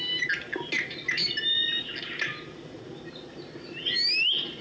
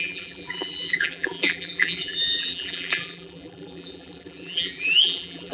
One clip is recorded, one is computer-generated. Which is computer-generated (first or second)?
second